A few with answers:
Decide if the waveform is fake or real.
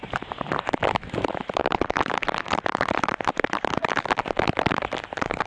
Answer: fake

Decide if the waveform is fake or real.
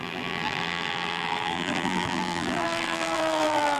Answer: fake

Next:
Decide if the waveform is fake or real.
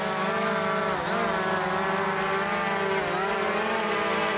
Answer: real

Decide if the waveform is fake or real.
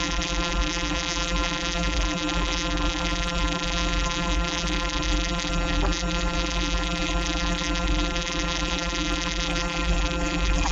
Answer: fake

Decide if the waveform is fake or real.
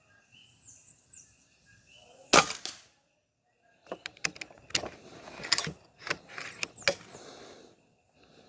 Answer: real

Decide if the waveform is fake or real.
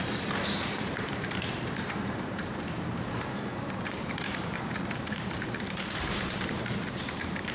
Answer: fake